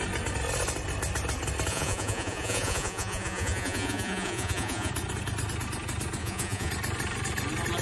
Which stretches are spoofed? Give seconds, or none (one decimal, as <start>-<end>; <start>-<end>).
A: 1.7-4.9; 6.2-6.7

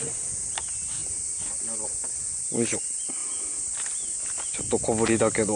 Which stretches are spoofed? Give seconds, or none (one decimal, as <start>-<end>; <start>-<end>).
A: none

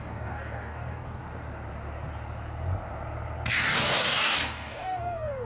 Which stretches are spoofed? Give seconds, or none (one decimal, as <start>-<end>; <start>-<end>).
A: 0.0-1.2; 3.5-5.5

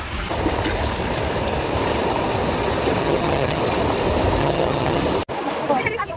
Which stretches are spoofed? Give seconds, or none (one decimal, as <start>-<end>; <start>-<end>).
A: 3.0-3.6; 4.4-5.0

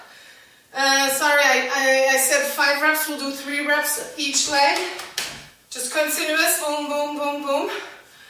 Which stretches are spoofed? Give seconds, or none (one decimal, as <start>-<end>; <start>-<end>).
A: 1.8-3.1; 3.5-6.9

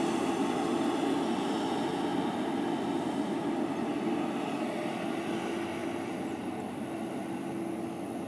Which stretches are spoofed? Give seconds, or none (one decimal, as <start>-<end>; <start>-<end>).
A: 5.8-6.4

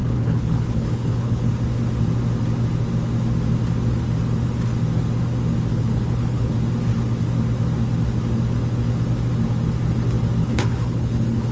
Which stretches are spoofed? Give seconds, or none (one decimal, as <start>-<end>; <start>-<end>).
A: 0.0-1.5; 5.7-6.5; 10.4-11.5